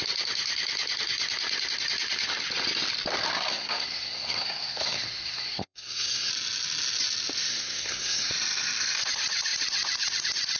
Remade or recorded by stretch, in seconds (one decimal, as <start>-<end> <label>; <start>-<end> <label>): 0.0-3.5 recorded; 3.5-6.3 remade; 6.3-7.5 recorded; 7.5-8.3 remade; 8.3-10.6 recorded

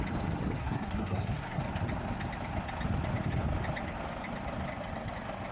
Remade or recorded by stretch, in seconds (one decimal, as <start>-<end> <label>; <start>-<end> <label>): 0.0-0.6 recorded; 0.6-1.6 remade; 1.6-5.5 recorded

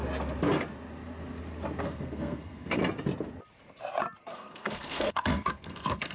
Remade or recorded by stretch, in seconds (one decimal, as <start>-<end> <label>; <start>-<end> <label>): 0.0-1.8 recorded; 1.8-2.8 remade; 2.8-4.3 recorded; 4.3-6.1 remade

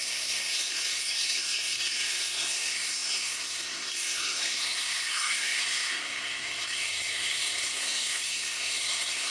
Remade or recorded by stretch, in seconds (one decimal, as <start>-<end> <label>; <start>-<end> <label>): 0.0-9.3 remade

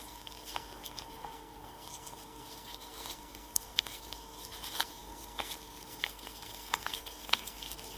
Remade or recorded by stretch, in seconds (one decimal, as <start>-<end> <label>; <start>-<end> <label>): 0.0-8.0 remade

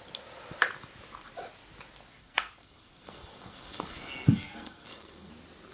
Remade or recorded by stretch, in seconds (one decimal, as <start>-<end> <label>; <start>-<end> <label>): 0.0-2.2 recorded; 2.2-5.3 remade; 5.3-5.7 recorded